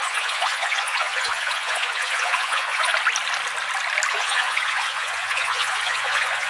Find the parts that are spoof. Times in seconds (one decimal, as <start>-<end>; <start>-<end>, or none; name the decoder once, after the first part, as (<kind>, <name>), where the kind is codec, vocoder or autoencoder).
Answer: 0.0-2.9 (vocoder, Vocos); 4.1-6.5